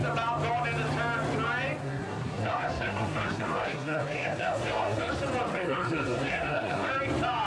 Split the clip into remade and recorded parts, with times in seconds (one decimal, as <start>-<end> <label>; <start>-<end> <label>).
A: 0.0-1.8 recorded; 1.8-5.1 remade; 5.1-5.5 recorded; 5.5-6.9 remade; 6.9-7.5 recorded